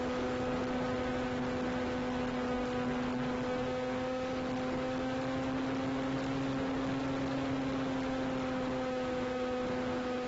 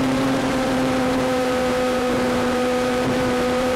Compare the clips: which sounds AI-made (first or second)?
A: second